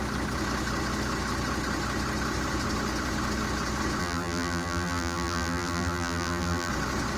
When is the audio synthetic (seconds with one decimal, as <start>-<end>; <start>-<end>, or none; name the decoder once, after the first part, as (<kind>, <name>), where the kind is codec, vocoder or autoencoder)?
4.0-6.7 (vocoder, BigVGAN v2)